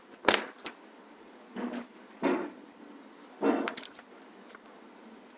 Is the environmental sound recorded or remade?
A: recorded